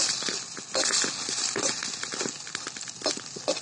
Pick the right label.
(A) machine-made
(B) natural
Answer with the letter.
B